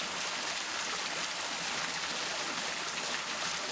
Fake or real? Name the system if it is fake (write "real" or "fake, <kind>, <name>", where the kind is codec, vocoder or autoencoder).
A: real